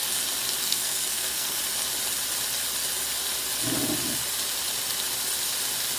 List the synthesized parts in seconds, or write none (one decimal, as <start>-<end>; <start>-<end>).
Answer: 0.6-1.6